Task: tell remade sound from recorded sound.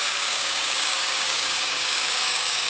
remade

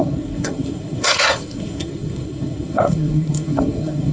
remade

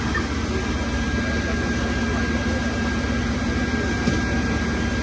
recorded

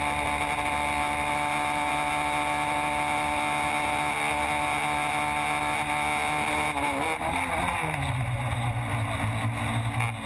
recorded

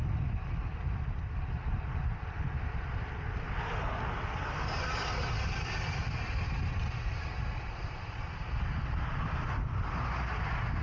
recorded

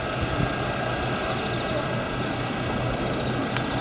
recorded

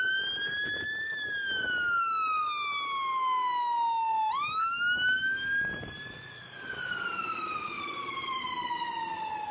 recorded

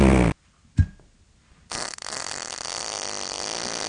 recorded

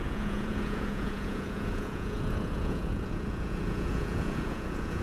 remade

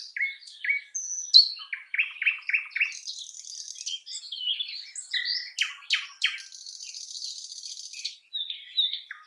recorded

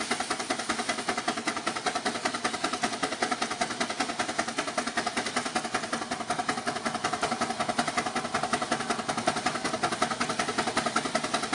recorded